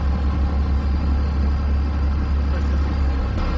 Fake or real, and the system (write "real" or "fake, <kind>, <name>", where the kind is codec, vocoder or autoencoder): real